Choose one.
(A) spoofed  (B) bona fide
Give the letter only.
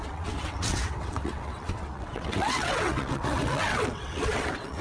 A